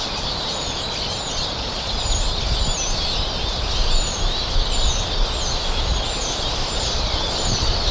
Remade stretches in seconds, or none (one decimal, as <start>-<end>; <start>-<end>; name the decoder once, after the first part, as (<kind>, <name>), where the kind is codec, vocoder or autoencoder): 6.2-7.9 (vocoder, BigVGAN v2)